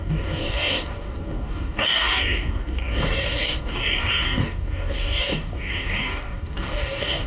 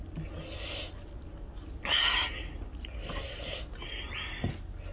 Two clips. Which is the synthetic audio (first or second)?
first